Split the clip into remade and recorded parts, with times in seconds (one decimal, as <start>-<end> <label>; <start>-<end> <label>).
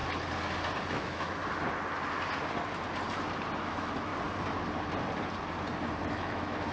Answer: 0.0-0.9 recorded; 0.9-1.4 remade; 1.4-3.6 recorded; 3.6-4.1 remade; 4.1-6.1 recorded; 6.1-6.7 remade